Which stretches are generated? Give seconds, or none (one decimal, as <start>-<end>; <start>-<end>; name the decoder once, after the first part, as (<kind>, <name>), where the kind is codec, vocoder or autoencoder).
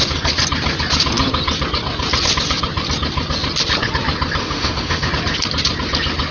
4.4-5.1 (autoencoder, DAC-VAE)